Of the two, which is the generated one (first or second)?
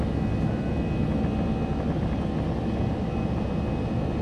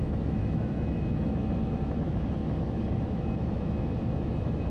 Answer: second